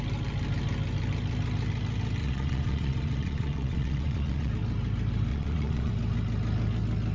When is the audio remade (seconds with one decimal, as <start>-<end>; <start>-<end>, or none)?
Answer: 2.2-4.5; 5.3-5.9